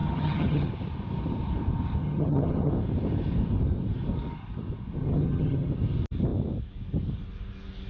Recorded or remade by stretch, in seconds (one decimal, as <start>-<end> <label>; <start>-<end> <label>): 0.0-0.7 remade; 0.7-2.0 recorded; 2.0-2.7 remade; 2.7-5.0 recorded; 5.0-5.7 remade; 5.7-7.9 recorded